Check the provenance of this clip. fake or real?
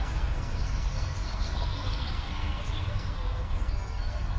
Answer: fake